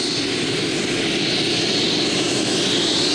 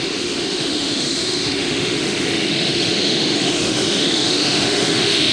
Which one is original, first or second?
first